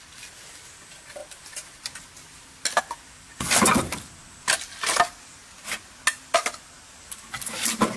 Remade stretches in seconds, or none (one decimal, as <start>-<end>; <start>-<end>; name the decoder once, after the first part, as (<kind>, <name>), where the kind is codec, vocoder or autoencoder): none